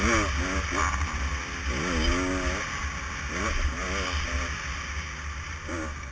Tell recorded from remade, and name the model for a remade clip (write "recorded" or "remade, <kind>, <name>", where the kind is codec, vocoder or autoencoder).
recorded